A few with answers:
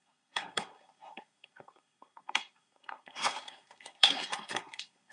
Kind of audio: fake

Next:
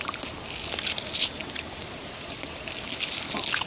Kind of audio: real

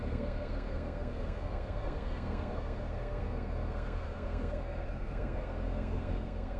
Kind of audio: fake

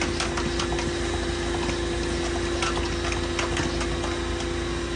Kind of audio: real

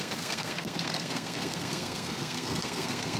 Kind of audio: fake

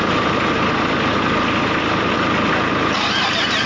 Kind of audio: real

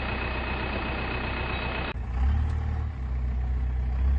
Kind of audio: real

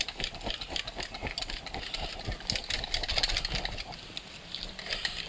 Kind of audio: real